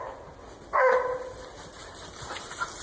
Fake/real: real